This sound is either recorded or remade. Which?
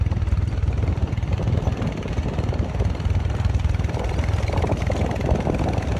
recorded